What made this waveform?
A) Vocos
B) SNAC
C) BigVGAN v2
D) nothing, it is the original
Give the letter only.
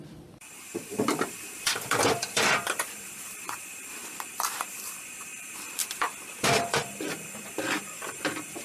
C